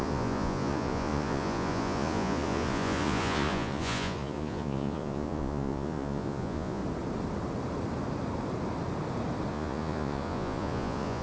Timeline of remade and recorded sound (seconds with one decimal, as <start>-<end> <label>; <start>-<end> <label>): 0.0-6.8 remade; 6.8-9.5 recorded; 9.5-11.2 remade

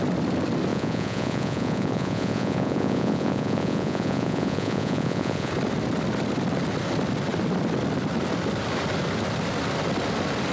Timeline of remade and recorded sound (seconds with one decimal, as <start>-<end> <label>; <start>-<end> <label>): 0.0-0.7 recorded; 0.7-5.5 remade; 5.5-10.5 recorded

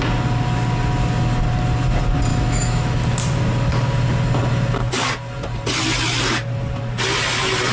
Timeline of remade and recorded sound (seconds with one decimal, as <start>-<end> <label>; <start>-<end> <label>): 0.0-2.3 recorded; 2.3-3.0 remade; 3.0-7.7 recorded

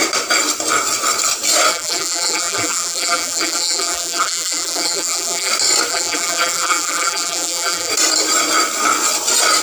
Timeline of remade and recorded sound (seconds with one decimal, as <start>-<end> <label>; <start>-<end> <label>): 0.0-1.7 recorded; 1.7-5.5 remade; 5.5-5.9 recorded; 5.9-7.9 remade; 7.9-9.6 recorded

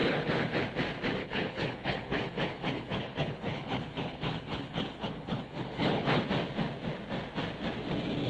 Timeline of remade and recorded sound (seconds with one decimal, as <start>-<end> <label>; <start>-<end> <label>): 0.0-0.6 remade; 0.6-1.2 recorded; 1.2-6.2 remade; 6.2-8.3 recorded